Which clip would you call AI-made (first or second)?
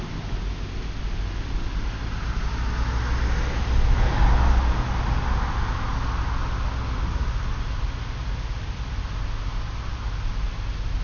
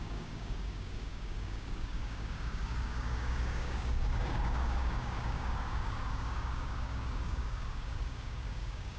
second